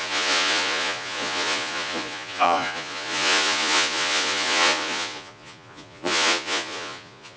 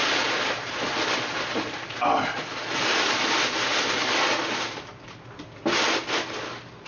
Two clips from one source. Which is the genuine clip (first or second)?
second